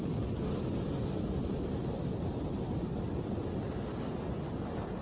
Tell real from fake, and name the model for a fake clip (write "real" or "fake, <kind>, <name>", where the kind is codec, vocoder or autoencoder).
real